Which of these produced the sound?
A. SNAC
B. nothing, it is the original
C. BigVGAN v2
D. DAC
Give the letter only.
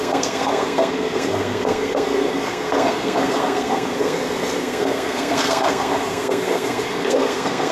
A